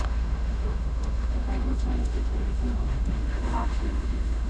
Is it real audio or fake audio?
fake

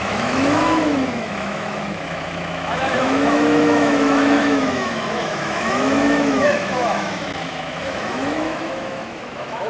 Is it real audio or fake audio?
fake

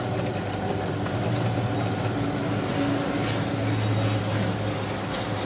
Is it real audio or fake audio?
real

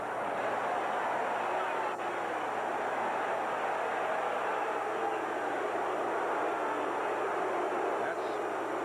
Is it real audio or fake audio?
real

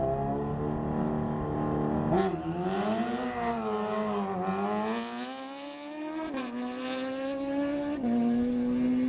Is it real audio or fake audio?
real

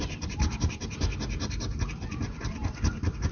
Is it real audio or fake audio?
real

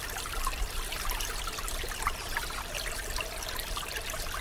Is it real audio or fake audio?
real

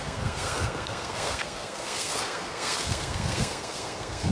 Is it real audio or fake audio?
fake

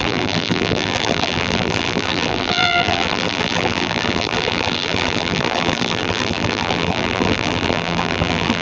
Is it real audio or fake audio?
fake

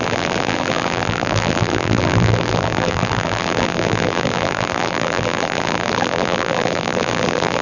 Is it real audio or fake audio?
fake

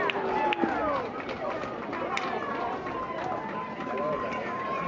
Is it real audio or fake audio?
real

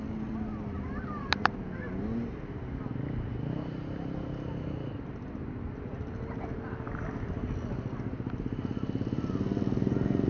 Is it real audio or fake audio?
real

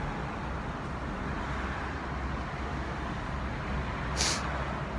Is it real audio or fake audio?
real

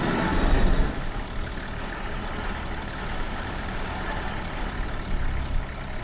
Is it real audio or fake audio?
real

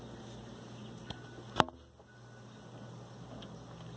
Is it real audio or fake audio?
real